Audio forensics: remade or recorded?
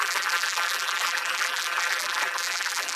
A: remade